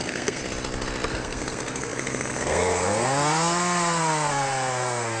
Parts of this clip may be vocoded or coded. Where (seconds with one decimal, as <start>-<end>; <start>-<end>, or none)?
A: 0.0-0.4; 1.1-5.2